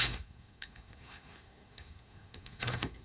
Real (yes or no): no